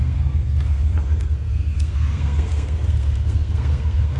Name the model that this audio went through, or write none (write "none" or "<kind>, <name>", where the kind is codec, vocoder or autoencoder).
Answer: codec, SNAC